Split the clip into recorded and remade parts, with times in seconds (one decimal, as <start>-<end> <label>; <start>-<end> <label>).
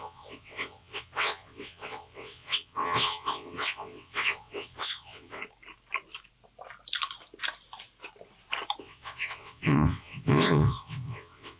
0.0-5.4 remade; 5.4-8.8 recorded; 8.8-11.6 remade